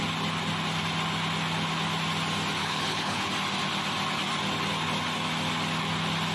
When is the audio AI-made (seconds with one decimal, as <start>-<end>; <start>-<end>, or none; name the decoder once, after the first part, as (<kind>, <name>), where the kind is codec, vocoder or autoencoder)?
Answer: 2.6-3.3 (codec, HILCodec)